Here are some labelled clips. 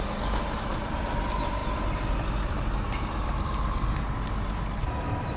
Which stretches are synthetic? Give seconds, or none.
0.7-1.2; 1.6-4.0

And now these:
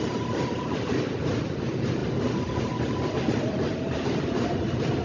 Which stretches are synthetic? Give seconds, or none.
0.0-2.0; 2.6-5.0

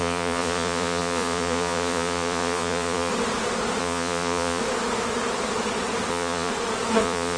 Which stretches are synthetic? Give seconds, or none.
0.0-3.1; 3.8-4.6; 6.1-6.5; 7.0-7.4